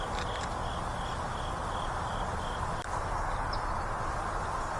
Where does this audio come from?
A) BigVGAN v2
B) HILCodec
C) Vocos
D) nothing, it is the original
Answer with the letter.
D